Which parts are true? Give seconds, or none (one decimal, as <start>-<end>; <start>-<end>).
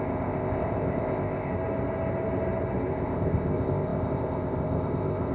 1.5-2.9